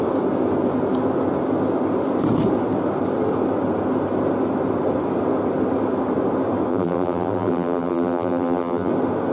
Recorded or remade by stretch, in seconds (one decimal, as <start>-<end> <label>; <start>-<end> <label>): 0.0-6.7 recorded; 6.7-8.9 remade; 8.9-9.3 recorded